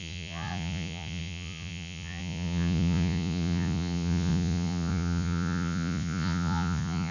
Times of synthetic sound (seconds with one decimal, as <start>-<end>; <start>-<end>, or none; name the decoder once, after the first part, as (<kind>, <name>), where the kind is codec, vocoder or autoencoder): 0.0-7.1 (vocoder, Vocos)